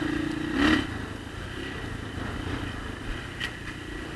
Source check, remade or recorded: recorded